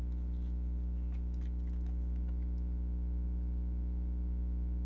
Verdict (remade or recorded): recorded